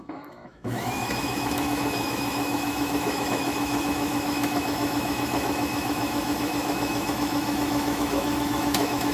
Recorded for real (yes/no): no